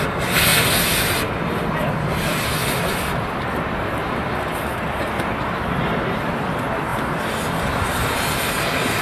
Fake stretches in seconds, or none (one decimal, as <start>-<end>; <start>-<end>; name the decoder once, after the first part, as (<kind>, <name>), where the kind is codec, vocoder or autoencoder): 0.5-1.3 (vocoder, BigVGAN v2); 2.6-5.2